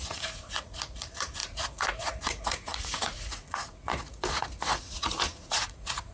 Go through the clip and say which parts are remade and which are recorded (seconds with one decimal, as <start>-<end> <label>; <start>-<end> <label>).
0.0-6.1 remade